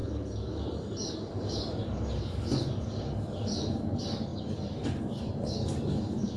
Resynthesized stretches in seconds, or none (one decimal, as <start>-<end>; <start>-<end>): 0.0-6.4

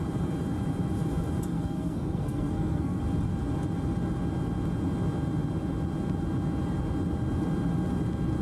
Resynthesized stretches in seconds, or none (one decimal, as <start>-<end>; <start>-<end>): 1.5-3.0

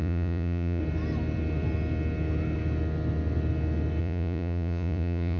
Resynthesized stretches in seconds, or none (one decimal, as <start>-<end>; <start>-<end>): 0.0-0.8; 4.0-5.4

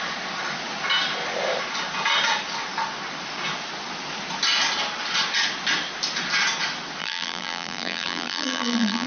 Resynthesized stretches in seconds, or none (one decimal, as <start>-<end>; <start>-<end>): 7.0-9.1

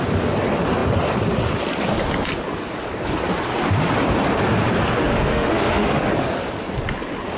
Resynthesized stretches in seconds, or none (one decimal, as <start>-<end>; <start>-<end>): 5.3-6.1